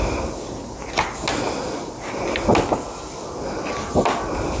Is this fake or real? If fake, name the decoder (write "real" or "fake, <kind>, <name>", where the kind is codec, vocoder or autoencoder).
real